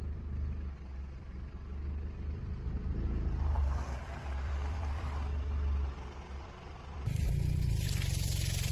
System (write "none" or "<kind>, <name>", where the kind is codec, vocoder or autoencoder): vocoder, BigVGAN v2